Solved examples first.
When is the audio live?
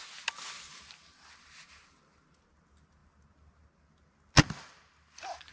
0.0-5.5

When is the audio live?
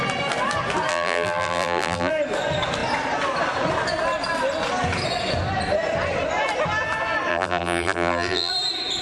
0.0-0.9; 2.1-7.3; 8.5-9.0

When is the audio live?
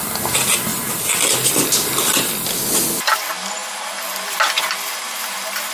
0.0-5.7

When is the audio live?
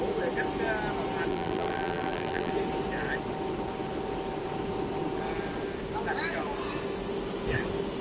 0.0-1.3; 2.5-8.0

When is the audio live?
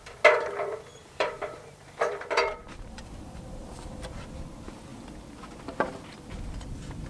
0.0-1.0; 3.7-7.1